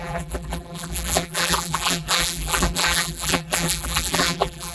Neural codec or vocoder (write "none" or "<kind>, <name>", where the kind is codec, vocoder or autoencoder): vocoder, BigVGAN v2